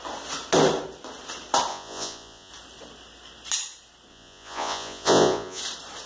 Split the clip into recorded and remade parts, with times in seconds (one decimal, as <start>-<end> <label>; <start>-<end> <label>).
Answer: 0.0-1.7 recorded; 1.7-2.5 remade; 2.5-4.1 recorded; 4.1-5.6 remade; 5.6-6.1 recorded